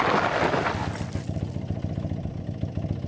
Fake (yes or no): no